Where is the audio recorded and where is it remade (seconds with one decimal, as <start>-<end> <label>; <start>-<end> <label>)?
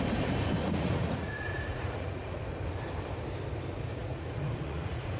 0.0-0.6 recorded; 0.6-2.4 remade; 2.4-3.9 recorded; 3.9-5.2 remade